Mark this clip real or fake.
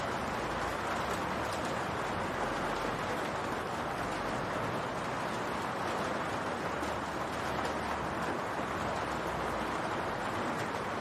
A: real